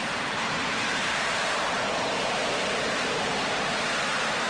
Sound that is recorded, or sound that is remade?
remade